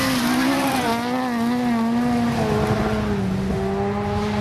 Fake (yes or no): no